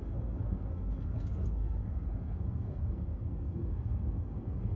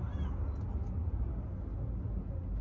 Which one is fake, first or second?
first